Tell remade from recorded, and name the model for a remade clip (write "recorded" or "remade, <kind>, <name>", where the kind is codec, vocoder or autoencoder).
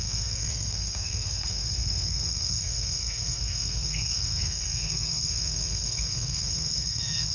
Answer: remade, codec, SNAC